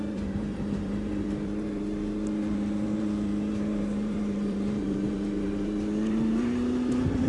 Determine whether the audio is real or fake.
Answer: fake